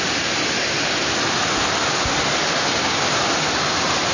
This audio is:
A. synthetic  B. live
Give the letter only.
B